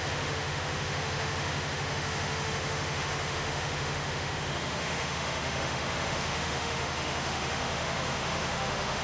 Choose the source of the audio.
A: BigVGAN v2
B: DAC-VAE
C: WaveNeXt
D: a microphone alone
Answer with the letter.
B